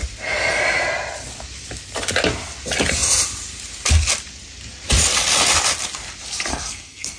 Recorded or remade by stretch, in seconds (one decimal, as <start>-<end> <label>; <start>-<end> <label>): 0.0-6.5 recorded; 6.5-7.2 remade